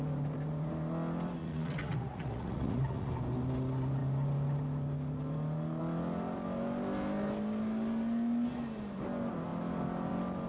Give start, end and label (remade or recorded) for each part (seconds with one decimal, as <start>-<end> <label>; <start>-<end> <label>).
0.0-1.4 recorded; 1.4-3.1 remade; 3.1-10.5 recorded

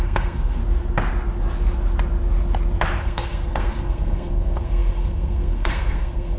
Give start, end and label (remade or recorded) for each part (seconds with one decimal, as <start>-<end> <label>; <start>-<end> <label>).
0.0-0.6 remade; 0.6-3.0 recorded; 3.0-6.4 remade

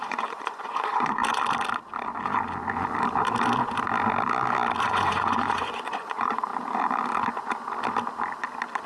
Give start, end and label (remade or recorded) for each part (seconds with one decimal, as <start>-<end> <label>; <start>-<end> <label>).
0.0-1.2 remade; 1.2-4.8 recorded; 4.8-6.5 remade; 6.5-8.9 recorded

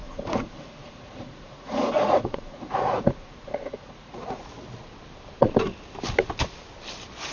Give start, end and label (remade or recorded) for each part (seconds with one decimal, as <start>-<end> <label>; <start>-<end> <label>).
0.0-4.4 remade; 4.4-7.3 recorded

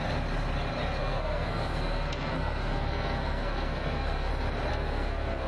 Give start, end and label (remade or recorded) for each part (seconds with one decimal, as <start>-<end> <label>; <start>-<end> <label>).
0.0-1.0 recorded; 1.0-4.3 remade; 4.3-4.7 recorded; 4.7-5.5 remade

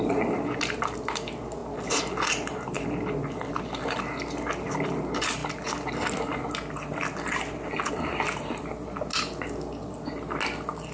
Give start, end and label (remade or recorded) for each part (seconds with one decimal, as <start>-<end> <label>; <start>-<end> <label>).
0.0-10.9 recorded

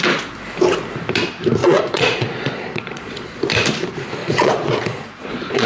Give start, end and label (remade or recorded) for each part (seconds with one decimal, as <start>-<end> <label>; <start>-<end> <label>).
0.0-1.6 recorded; 1.6-3.4 remade; 3.4-4.2 recorded; 4.2-5.7 remade